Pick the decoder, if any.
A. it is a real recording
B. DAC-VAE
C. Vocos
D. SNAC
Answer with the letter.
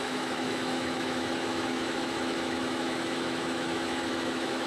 B